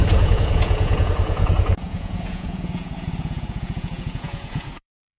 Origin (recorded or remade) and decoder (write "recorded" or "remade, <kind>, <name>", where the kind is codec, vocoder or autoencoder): remade, vocoder, Vocos